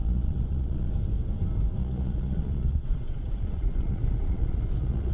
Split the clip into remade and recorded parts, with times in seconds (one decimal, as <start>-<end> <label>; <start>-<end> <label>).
0.0-0.9 remade; 0.9-1.8 recorded; 1.8-5.1 remade